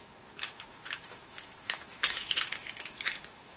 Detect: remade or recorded remade